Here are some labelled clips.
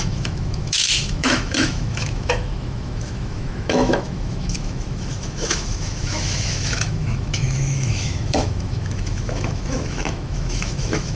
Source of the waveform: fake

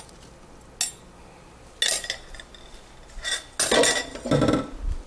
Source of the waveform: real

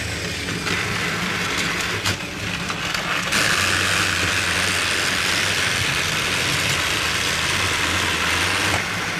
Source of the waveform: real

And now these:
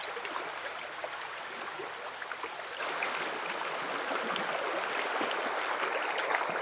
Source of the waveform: real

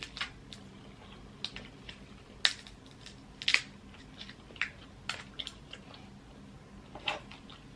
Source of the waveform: real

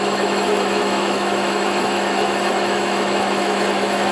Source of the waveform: fake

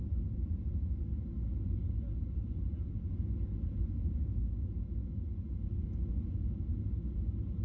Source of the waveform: real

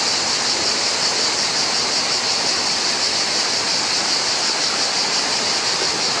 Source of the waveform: real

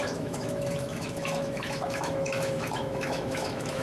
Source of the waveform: fake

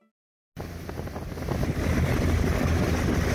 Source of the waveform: real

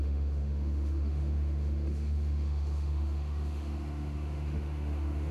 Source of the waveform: fake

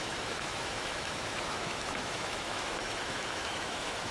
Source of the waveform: fake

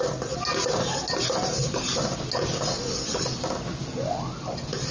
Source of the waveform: real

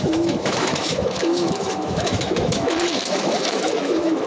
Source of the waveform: fake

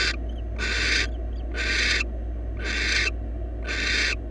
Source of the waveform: real